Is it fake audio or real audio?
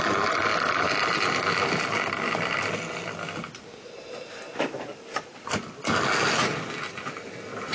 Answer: real